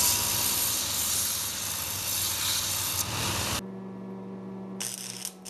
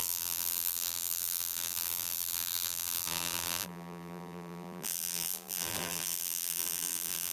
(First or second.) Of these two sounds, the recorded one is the first